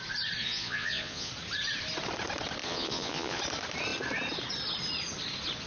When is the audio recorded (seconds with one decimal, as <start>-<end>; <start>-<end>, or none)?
0.0-0.4; 1.3-2.6; 3.4-5.7